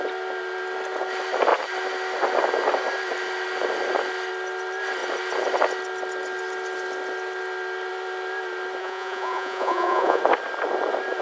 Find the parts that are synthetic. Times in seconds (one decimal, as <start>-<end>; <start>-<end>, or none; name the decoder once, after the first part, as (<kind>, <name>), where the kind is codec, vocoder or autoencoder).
8.8-10.2 (vocoder, Vocos)